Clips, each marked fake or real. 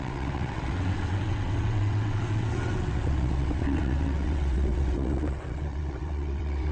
fake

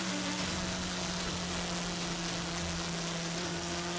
real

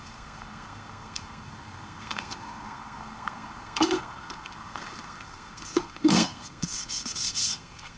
fake